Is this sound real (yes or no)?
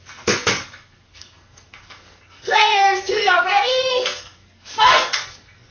no